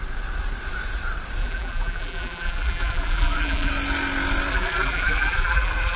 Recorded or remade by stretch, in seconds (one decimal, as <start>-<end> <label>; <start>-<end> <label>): 0.0-1.4 recorded; 1.4-3.7 remade; 3.7-4.5 recorded; 4.5-6.0 remade